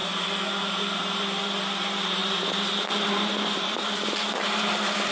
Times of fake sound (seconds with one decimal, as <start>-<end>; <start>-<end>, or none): 0.6-2.2; 3.3-3.8